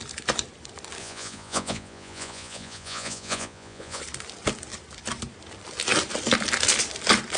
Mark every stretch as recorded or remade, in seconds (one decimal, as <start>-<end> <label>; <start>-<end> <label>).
0.0-1.0 recorded; 1.0-4.0 remade; 4.0-7.4 recorded